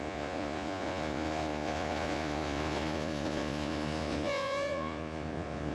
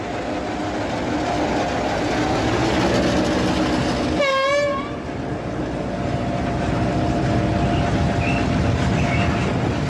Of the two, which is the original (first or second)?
second